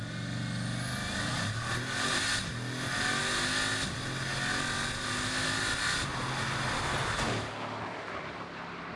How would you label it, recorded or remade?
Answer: recorded